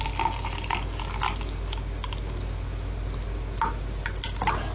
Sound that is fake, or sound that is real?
real